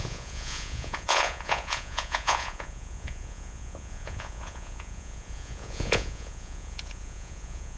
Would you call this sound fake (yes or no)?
yes